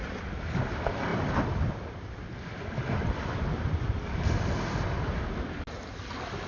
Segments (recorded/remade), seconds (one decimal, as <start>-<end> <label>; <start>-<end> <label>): 0.0-6.5 recorded